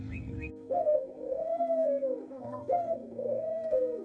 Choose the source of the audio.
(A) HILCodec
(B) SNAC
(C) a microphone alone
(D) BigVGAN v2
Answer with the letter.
B